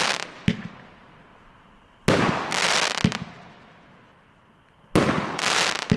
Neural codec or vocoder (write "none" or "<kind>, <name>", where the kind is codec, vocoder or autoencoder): none